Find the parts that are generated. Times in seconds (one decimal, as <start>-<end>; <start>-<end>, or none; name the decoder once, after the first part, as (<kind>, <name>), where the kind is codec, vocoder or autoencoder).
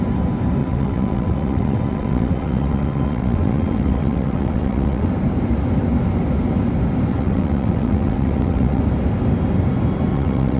0.6-5.1 (vocoder, WaveNeXt); 7.1-8.8; 10.1-10.6